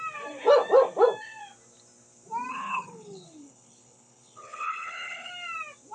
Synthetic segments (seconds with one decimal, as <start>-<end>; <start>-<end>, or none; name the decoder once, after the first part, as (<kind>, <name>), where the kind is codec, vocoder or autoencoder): 2.5-5.3 (codec, HILCodec)